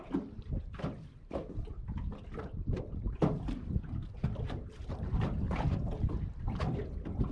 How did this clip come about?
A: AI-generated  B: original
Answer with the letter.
B